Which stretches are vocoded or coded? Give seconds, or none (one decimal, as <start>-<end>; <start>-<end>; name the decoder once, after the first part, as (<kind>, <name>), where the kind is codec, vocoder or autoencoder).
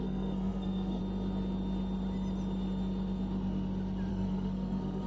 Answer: 0.0-1.0 (codec, SNAC); 4.1-5.1